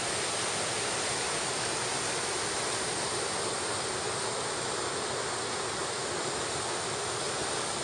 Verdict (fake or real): real